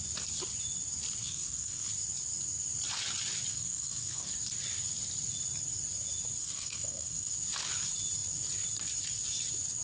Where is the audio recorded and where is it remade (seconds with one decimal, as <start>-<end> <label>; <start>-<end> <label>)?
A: 0.0-1.2 recorded; 1.2-1.9 remade; 1.9-3.5 recorded; 3.5-4.3 remade; 4.3-6.4 recorded; 6.4-7.3 remade; 7.3-9.8 recorded